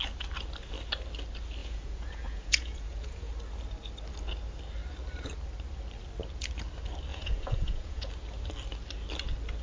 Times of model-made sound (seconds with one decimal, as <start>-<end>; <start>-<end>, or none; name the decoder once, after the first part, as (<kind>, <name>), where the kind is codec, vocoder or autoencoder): 1.6-3.3 (vocoder, Vocos); 7.1-8.1